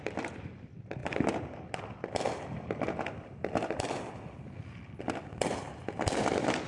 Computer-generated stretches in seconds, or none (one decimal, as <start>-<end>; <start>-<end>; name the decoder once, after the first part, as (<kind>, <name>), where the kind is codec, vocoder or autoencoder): none